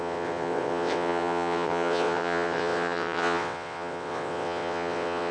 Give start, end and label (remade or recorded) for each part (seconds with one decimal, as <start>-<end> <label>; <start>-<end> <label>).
0.0-5.3 remade